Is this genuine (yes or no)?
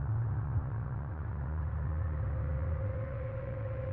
no